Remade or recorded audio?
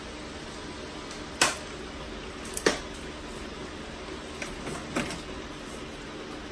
recorded